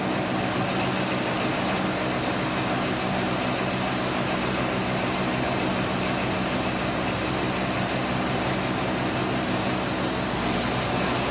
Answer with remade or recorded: recorded